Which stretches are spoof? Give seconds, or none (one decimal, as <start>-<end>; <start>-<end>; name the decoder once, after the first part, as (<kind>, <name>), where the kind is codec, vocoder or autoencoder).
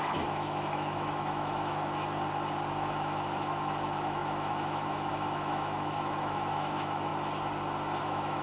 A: 0.0-2.0 (autoencoder, DAC-VAE); 2.7-7.1; 8.0-8.4